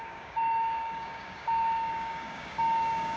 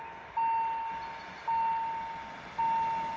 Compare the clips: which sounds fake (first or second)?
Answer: first